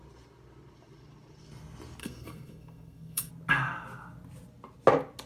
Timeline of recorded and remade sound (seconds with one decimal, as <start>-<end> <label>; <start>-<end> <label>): 0.0-2.0 recorded; 2.0-3.3 remade; 3.3-5.3 recorded